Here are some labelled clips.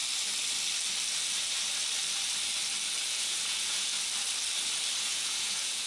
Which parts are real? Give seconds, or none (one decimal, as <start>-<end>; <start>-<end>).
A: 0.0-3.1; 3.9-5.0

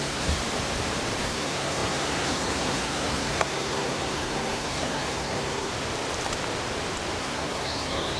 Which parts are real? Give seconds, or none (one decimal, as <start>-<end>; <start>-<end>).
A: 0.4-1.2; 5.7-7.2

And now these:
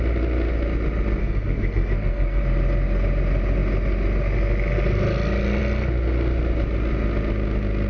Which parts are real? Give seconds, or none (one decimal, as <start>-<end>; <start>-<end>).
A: 0.0-1.2; 2.4-7.9

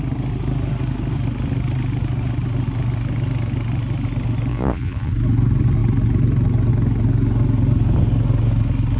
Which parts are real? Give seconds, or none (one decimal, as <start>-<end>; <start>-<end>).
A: 0.0-4.5; 5.1-9.0

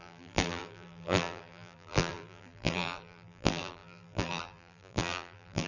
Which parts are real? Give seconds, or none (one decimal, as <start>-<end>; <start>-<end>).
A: none

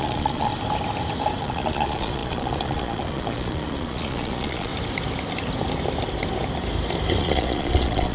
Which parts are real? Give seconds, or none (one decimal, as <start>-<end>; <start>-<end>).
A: 0.5-1.4; 4.7-7.2

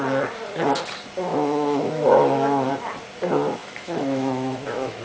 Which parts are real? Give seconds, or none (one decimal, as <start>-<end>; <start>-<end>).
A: 0.0-1.3; 2.7-3.6